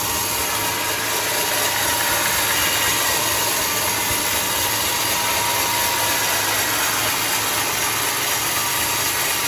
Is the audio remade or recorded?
recorded